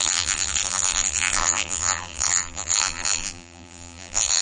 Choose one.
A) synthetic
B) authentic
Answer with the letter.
A